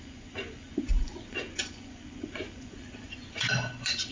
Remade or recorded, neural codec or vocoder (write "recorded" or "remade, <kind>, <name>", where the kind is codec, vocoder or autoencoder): remade, vocoder, Vocos